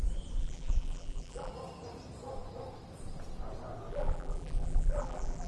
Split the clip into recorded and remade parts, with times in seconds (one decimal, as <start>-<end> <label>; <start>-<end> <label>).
0.0-0.4 recorded; 0.4-1.5 remade; 1.5-3.9 recorded; 3.9-5.5 remade